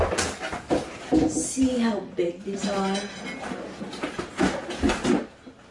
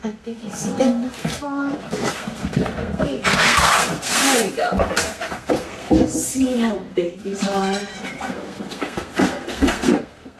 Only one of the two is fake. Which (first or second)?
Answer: second